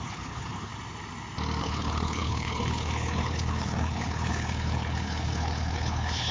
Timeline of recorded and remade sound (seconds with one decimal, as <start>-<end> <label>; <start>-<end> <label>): 0.0-0.7 remade; 0.7-1.6 recorded; 1.6-6.3 remade